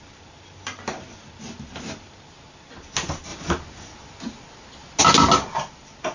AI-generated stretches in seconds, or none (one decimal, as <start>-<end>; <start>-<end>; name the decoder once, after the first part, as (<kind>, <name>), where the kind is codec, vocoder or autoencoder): none